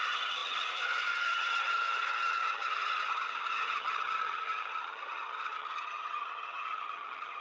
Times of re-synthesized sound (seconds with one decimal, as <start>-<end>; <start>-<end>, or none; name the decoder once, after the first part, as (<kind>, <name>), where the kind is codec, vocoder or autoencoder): 0.0-7.4 (vocoder, HiFi-GAN)